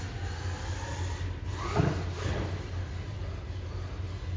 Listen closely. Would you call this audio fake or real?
real